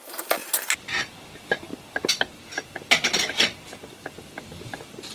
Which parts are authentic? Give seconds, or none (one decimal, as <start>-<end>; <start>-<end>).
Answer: 0.0-5.1